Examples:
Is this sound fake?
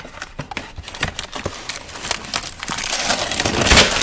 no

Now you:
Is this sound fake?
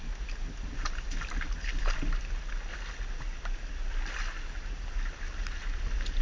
no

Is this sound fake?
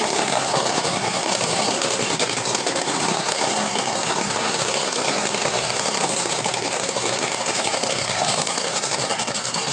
yes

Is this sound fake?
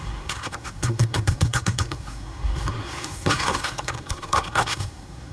yes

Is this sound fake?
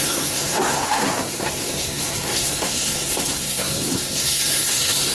yes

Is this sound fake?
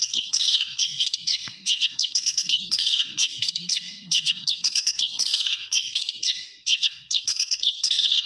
yes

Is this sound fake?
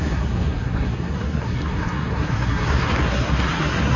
yes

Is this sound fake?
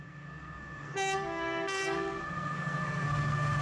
yes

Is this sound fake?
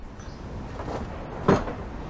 no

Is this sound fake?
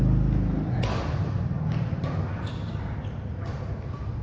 no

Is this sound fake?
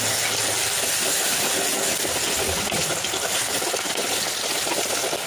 no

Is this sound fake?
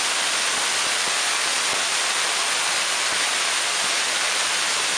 no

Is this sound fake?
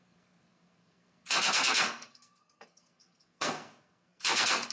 yes